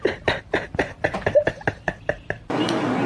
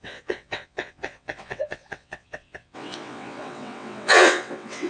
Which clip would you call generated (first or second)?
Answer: second